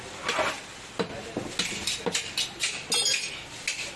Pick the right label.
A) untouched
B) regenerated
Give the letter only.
A